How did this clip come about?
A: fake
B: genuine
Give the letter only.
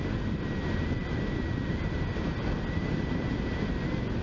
B